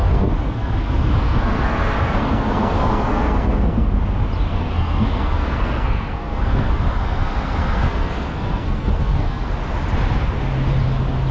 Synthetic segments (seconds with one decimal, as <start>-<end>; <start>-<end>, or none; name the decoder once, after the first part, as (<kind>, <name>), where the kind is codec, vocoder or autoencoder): 0.0-3.9 (codec, SNAC); 4.5-9.5